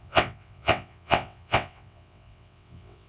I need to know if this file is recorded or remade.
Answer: remade